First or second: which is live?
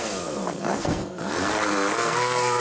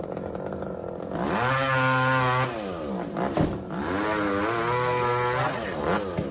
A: second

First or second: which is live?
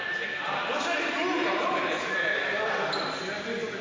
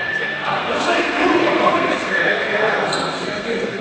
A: first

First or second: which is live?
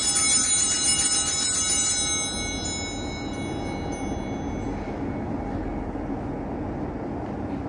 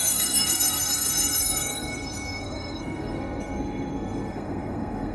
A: first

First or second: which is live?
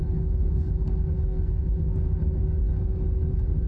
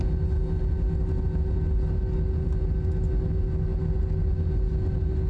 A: second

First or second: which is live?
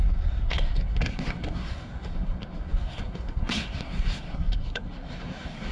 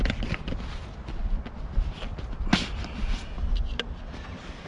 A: second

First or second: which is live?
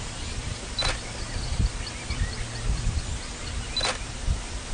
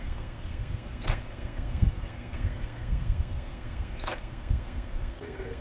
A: first